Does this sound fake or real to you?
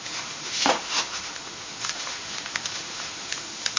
fake